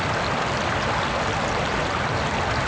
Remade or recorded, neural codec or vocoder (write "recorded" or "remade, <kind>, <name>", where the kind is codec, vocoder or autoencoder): recorded